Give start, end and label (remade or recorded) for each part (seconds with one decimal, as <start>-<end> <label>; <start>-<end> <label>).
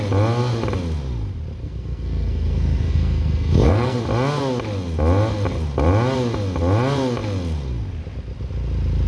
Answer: 0.0-1.6 recorded; 1.6-4.0 remade; 4.0-9.1 recorded